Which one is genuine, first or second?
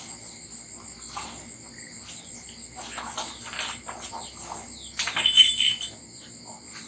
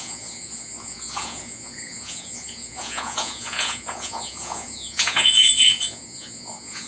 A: first